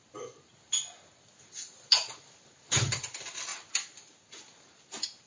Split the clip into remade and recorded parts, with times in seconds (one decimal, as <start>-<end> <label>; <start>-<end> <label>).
0.0-5.3 recorded